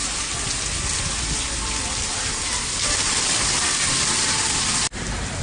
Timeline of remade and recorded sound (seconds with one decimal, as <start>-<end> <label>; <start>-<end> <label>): 0.0-5.4 remade